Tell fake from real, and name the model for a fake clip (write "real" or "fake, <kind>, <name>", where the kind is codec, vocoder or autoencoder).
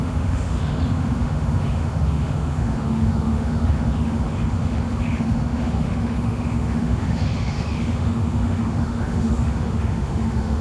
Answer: fake, autoencoder, DAC-VAE